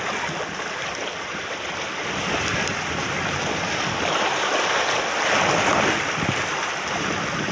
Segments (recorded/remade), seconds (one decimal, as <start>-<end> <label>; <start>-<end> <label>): 0.0-7.5 recorded